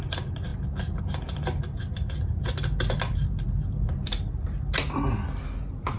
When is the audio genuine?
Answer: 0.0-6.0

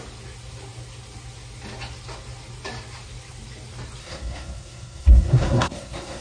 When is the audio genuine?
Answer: 0.0-4.0